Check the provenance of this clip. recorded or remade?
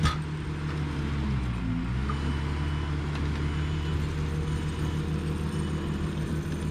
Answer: recorded